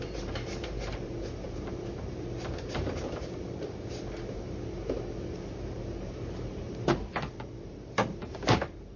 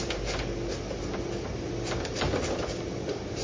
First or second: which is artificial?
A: first